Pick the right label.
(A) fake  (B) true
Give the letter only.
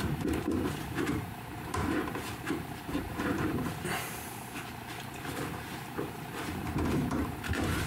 A